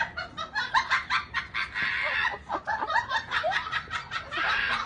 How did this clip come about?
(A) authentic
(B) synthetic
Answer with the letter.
A